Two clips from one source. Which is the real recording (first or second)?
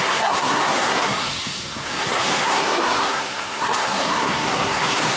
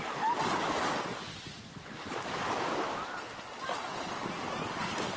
second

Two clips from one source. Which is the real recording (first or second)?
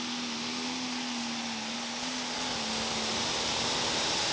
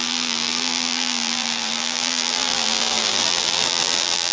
first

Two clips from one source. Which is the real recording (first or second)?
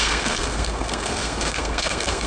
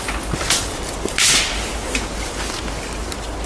second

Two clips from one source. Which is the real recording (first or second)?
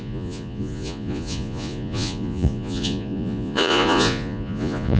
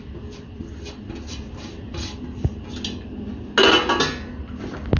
second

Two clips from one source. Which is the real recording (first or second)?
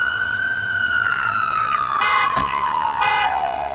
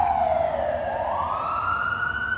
second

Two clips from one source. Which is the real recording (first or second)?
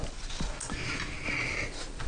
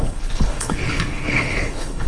first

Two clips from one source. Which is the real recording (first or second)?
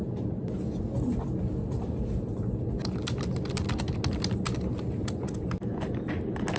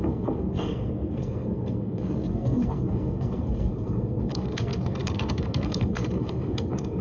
first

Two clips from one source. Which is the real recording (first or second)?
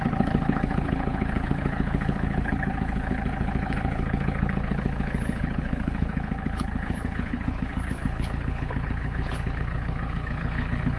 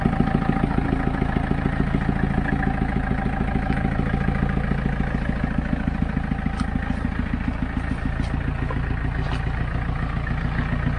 second